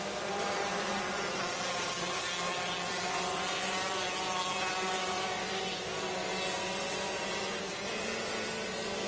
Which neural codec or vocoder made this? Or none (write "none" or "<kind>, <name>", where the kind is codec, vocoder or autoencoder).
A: none